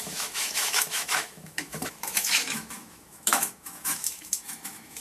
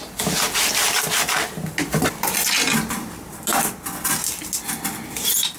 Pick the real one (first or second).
second